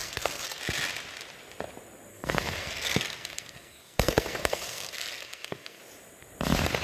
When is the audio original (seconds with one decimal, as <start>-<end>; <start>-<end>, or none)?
0.6-2.1; 5.8-6.8

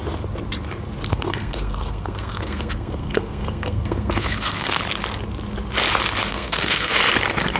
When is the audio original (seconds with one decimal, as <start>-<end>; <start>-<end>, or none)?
0.0-1.1; 4.8-6.3; 6.9-7.6

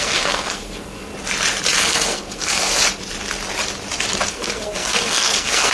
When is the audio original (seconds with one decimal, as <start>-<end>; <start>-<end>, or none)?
1.1-1.8; 2.8-4.3

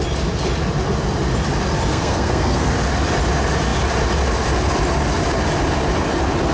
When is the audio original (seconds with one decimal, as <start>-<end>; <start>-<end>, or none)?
0.0-1.9; 2.7-6.5

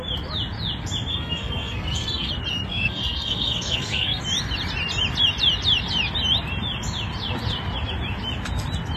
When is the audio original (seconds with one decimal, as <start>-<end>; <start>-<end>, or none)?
0.0-1.1; 2.3-2.7; 4.2-9.0

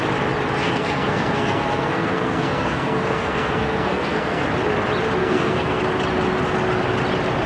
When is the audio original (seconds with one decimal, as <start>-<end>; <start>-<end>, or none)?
0.0-0.6; 4.5-5.2; 5.8-7.5

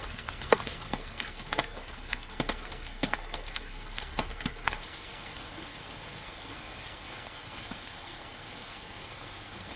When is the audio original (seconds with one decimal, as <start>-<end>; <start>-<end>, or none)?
none